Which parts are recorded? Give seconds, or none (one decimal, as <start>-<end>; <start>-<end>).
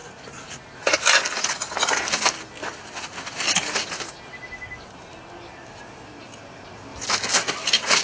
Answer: 0.0-8.0